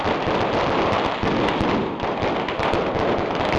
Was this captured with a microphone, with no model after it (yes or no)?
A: yes